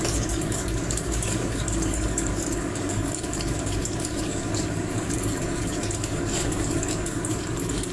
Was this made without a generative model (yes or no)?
no